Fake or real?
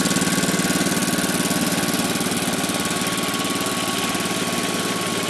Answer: real